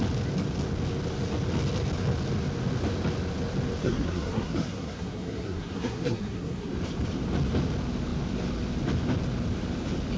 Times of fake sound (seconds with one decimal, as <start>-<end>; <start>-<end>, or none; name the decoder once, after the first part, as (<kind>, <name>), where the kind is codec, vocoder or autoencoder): 3.8-6.7 (codec, SNAC)

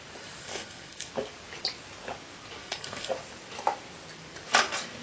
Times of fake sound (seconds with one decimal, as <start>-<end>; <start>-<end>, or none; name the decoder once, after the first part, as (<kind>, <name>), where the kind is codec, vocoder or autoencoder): 0.4-1.1 (codec, SNAC); 2.6-3.1